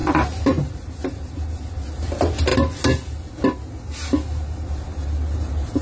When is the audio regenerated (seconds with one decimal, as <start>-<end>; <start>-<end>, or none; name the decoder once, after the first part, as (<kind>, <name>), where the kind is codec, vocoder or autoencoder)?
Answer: 0.0-1.3 (vocoder, BigVGAN v2)